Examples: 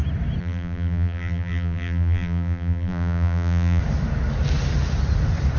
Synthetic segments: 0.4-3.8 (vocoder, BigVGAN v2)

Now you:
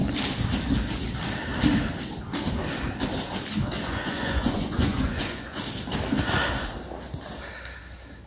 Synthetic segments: 3.8-5.6 (vocoder, Vocos)

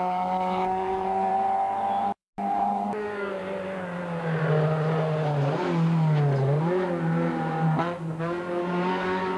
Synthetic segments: 0.0-1.3 (codec, DAC); 2.5-3.4; 8.2-9.4

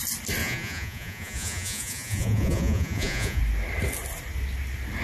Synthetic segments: 0.4-3.4 (vocoder, Vocos)

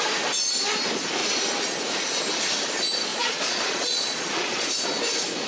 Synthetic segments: 3.1-4.7 (vocoder, Vocos)

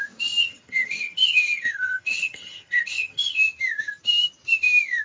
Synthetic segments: 0.4-3.4 (vocoder, HiFi-GAN)